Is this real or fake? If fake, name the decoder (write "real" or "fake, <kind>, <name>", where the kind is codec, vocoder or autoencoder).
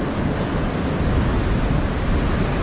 real